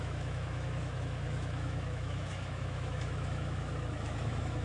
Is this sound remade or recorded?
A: remade